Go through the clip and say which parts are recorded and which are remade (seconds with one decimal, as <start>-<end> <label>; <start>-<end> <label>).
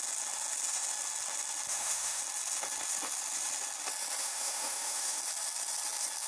0.0-1.7 recorded; 1.7-2.2 remade; 2.2-4.2 recorded; 4.2-5.2 remade; 5.2-6.3 recorded